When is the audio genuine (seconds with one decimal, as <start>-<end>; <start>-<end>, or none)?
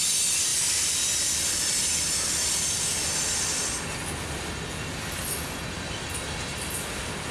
0.0-7.3